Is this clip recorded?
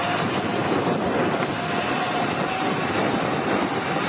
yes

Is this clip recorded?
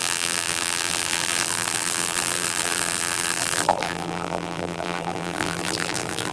no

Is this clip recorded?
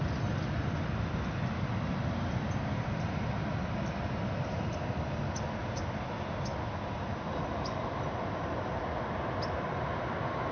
yes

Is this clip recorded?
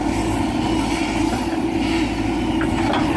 no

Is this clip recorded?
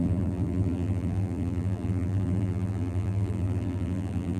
no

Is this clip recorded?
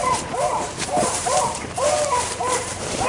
no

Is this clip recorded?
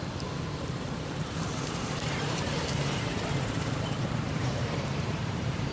no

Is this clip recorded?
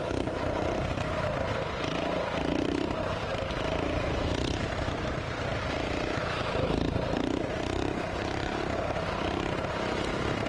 no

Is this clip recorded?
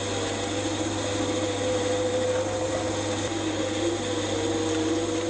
yes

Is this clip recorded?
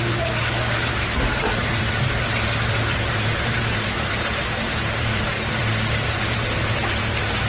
no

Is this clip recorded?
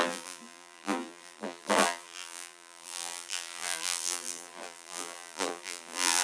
no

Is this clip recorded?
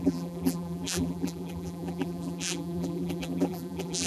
no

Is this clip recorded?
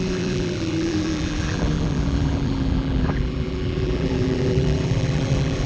no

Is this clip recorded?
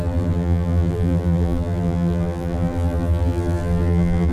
no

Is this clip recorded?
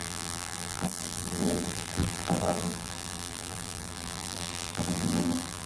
no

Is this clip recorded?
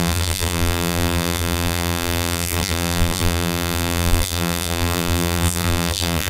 no